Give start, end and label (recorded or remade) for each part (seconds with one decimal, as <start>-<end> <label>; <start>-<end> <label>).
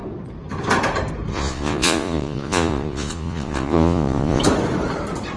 0.0-1.3 recorded; 1.3-4.4 remade; 4.4-5.4 recorded